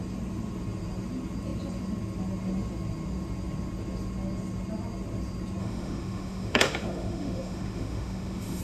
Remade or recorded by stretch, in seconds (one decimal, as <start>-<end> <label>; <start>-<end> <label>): 0.0-5.6 recorded; 5.6-8.6 remade